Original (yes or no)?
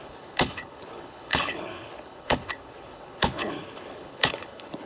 no